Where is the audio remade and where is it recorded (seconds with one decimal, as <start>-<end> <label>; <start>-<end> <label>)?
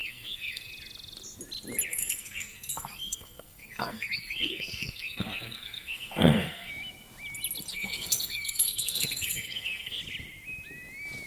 0.0-0.7 remade; 0.7-1.9 recorded; 1.9-6.7 remade; 6.7-7.7 recorded; 7.7-10.0 remade; 10.0-11.3 recorded